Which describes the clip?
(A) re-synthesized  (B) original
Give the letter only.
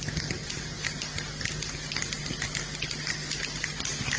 B